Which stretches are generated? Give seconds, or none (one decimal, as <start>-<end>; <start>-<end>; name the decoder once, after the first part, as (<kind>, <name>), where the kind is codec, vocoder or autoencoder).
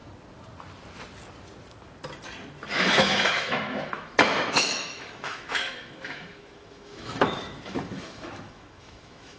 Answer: 2.7-9.4 (autoencoder, DAC-VAE)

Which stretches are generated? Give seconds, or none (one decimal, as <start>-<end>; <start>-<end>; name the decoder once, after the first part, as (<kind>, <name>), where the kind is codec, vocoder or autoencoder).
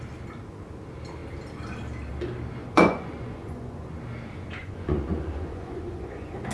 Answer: 2.6-3.9 (vocoder, Vocos); 4.6-6.5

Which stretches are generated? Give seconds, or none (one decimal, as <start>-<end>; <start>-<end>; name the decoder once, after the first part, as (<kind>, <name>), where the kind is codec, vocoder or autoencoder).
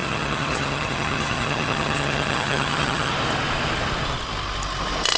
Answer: 0.0-3.1 (vocoder, HiFi-GAN)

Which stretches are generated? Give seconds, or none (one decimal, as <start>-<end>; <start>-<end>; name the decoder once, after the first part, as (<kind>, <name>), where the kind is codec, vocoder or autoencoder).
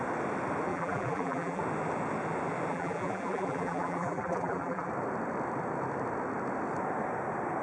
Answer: 0.7-1.6 (vocoder, BigVGAN v2); 2.7-4.9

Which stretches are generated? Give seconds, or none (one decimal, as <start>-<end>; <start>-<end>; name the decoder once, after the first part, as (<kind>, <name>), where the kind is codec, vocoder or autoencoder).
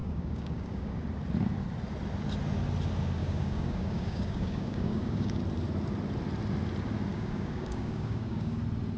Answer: 0.0-0.9 (codec, DAC); 3.2-5.4; 7.1-8.6